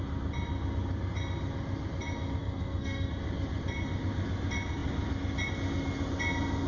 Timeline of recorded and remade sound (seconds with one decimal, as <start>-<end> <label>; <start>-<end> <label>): 0.0-2.4 recorded; 2.4-3.1 remade; 3.1-6.7 recorded